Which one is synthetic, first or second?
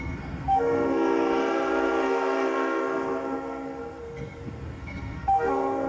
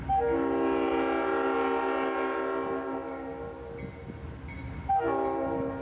first